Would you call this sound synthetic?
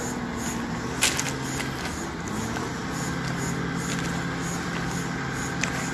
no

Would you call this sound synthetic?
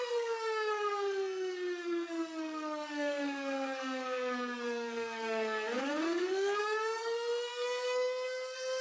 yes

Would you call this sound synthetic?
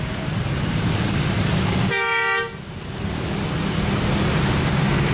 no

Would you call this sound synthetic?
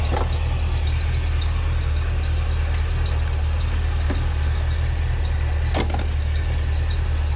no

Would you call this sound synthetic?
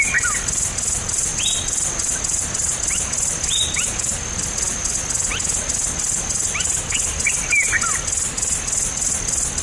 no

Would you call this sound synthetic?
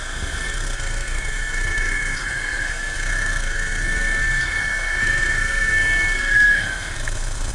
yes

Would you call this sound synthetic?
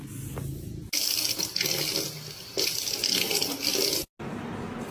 no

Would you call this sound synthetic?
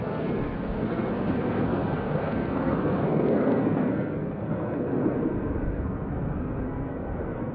yes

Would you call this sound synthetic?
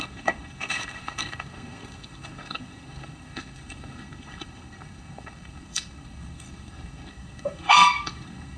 yes